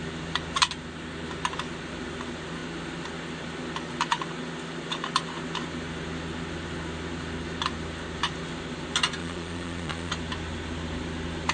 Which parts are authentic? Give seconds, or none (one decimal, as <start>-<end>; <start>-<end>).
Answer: 0.0-9.2; 10.1-11.5